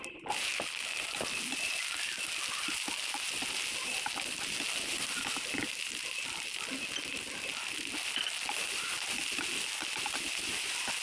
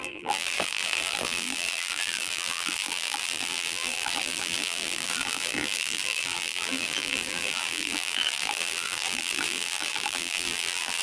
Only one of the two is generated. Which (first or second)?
second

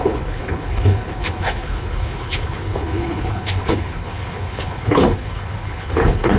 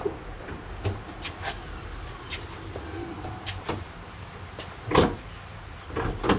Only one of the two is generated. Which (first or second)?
first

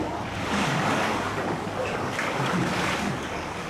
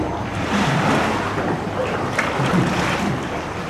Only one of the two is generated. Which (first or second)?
first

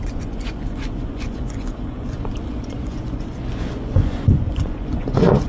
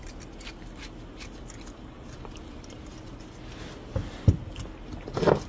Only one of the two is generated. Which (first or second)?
first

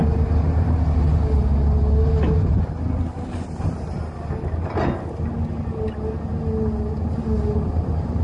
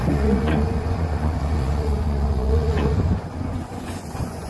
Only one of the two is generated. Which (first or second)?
second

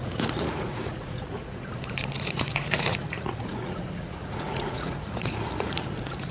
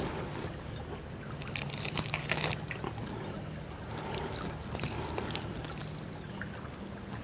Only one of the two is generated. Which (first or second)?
first